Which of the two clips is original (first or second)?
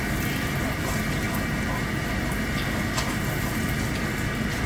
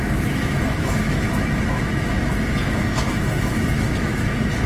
first